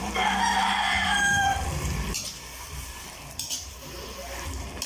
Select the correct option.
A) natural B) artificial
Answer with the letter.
B